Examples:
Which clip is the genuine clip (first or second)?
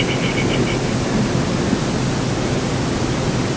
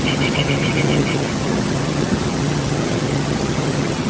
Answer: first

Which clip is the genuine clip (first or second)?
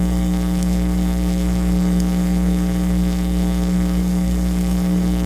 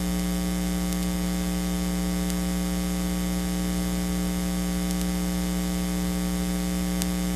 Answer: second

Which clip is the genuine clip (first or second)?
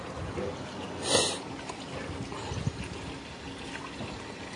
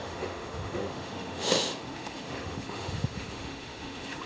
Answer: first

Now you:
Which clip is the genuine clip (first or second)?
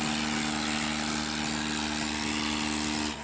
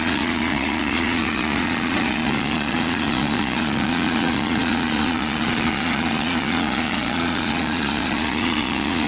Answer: first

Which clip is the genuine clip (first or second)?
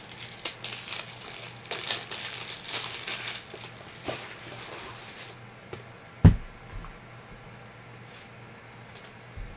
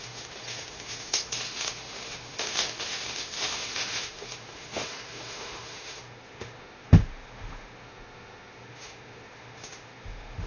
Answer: first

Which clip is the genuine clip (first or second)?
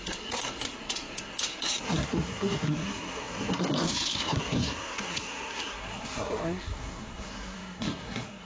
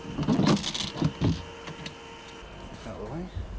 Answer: second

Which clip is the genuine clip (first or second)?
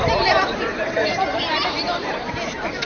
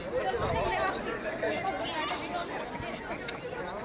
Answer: second